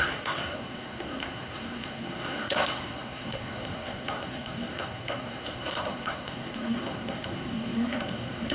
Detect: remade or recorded remade